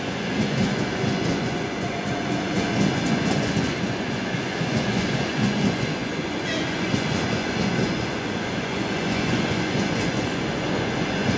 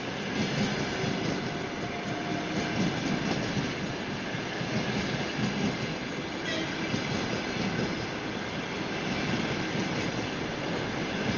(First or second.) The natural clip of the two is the second